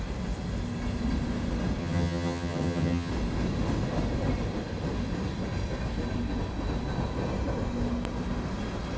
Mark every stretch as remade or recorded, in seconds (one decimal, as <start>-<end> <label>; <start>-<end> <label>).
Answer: 0.0-1.8 recorded; 1.8-3.1 remade; 3.1-9.0 recorded